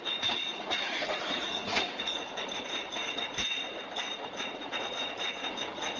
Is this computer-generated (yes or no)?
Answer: yes